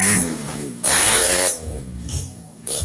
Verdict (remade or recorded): remade